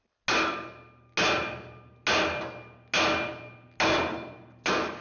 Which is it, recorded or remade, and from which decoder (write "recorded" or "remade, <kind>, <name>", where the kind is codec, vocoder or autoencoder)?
recorded